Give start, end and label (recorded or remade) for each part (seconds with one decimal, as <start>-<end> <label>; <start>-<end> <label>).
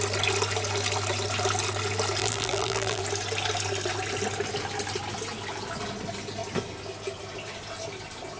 0.0-2.2 recorded; 2.2-3.0 remade; 3.0-8.4 recorded